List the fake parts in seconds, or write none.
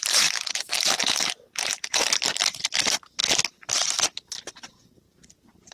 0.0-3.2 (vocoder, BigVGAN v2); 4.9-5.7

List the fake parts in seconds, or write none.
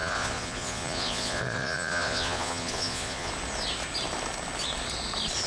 0.0-3.3 (vocoder, Vocos)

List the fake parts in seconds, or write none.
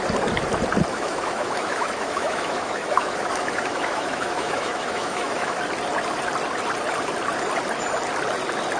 0.9-5.6 (autoencoder, DAC-VAE)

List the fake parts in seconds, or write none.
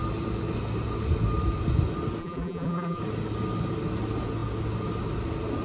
2.2-3.0 (vocoder, BigVGAN v2)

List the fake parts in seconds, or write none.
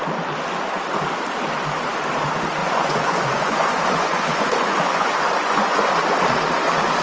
2.6-5.9 (vocoder, Vocos)